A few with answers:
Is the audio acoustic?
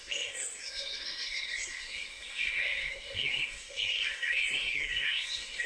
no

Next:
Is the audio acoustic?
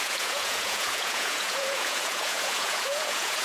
no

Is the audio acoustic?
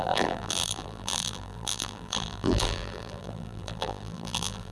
no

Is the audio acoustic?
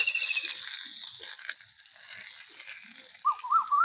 yes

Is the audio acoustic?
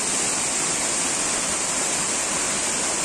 yes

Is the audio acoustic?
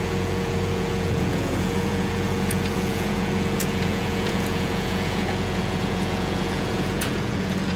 no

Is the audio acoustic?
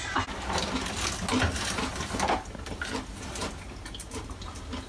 yes